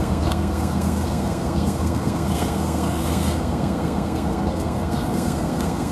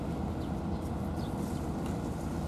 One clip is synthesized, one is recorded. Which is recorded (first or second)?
second